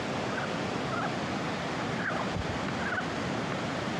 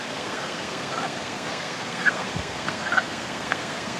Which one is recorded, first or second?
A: first